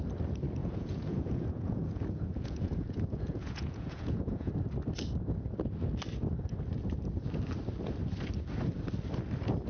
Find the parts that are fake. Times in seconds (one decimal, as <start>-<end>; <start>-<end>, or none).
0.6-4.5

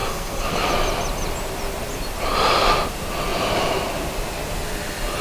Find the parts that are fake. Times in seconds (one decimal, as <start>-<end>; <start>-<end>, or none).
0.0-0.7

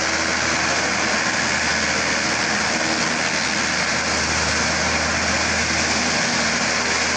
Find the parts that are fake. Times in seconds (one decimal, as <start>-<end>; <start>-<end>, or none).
none

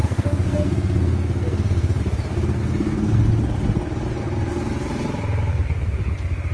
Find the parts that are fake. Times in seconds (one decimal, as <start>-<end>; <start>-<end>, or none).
0.0-2.0; 2.6-3.3; 5.5-6.1

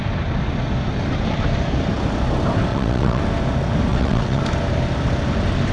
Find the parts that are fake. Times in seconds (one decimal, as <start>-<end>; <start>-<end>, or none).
2.7-3.2; 3.9-4.4